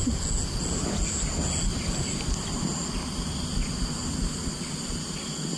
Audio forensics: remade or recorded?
recorded